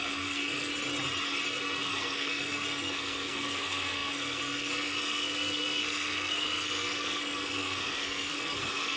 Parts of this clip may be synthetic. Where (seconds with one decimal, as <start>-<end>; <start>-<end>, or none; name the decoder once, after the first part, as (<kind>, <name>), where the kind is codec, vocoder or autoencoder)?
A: 0.0-0.7 (codec, SNAC); 1.5-9.0